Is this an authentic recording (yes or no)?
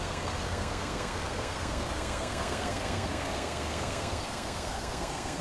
no